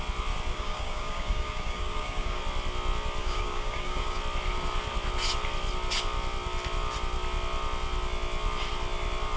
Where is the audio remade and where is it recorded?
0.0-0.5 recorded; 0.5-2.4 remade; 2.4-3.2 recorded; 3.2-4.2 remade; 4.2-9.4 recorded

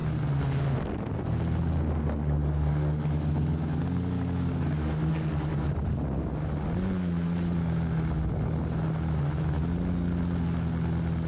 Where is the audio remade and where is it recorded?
0.0-2.4 recorded; 2.4-5.7 remade; 5.7-11.3 recorded

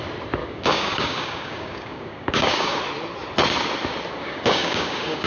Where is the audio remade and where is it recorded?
0.0-0.4 recorded; 0.4-2.8 remade; 2.8-4.2 recorded; 4.2-5.3 remade

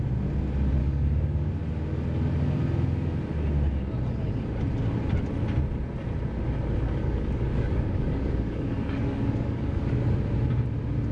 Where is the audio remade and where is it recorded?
0.0-0.8 recorded; 0.8-1.5 remade; 1.5-7.0 recorded; 7.0-10.0 remade; 10.0-11.1 recorded